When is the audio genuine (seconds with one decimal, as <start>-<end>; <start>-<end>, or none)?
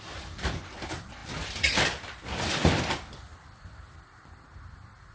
none